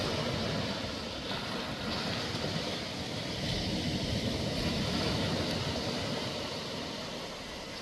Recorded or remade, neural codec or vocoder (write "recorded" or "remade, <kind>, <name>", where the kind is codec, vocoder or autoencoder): recorded